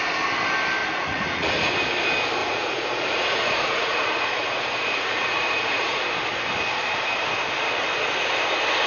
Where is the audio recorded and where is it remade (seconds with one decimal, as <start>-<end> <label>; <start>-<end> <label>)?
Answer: 0.0-0.8 recorded; 0.8-1.7 remade; 1.7-2.4 recorded; 2.4-6.0 remade; 6.0-8.9 recorded